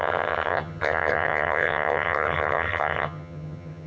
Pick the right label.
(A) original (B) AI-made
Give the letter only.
B